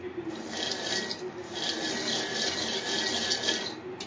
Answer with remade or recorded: recorded